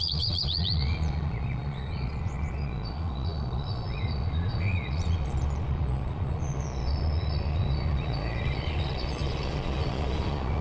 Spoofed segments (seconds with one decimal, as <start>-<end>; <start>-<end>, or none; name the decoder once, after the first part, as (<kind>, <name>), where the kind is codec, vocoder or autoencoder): 0.0-10.6 (vocoder, Vocos)